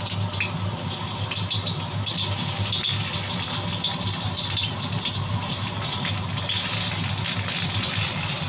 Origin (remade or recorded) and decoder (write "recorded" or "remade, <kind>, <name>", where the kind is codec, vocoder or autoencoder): recorded